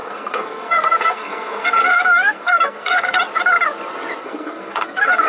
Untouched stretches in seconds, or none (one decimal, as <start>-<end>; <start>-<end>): 3.2-4.2